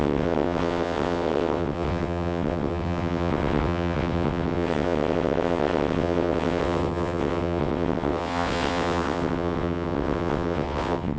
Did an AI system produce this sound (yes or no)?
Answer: yes